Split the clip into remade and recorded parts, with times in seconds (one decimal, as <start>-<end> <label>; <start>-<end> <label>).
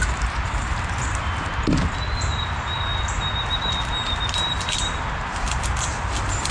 0.0-0.7 remade; 0.7-6.5 recorded